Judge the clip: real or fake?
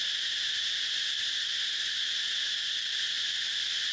real